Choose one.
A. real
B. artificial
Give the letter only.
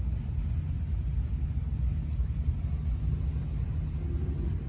A